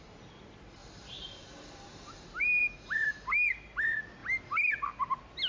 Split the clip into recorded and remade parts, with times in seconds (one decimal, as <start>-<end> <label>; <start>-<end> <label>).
0.0-0.8 recorded; 0.8-2.5 remade; 2.5-5.5 recorded